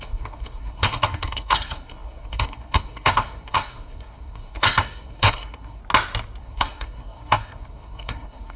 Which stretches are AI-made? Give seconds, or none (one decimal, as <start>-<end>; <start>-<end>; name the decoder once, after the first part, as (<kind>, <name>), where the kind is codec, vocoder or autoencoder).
0.0-5.8 (codec, SNAC); 6.4-8.6